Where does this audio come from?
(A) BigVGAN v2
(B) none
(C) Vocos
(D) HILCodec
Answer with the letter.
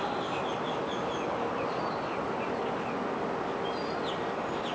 B